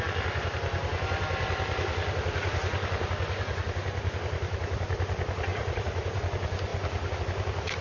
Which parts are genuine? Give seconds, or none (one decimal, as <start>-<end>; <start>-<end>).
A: 0.0-5.5; 6.2-7.8